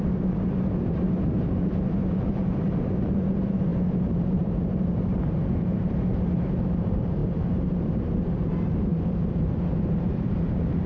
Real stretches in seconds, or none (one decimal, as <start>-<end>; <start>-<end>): none